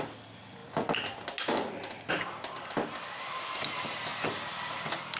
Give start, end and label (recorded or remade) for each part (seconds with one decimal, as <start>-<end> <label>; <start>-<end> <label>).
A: 0.0-5.2 recorded